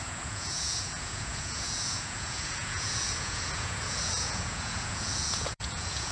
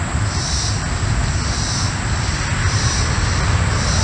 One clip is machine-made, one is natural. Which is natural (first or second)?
second